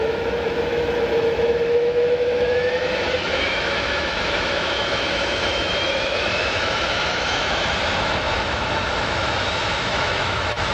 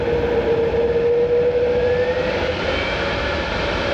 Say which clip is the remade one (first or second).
first